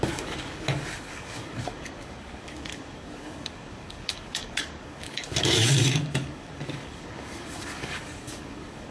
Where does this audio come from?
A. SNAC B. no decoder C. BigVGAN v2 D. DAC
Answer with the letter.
D